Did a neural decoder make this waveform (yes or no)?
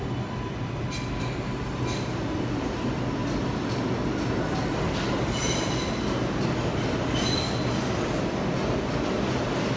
no